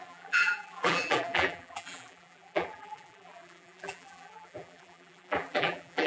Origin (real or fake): fake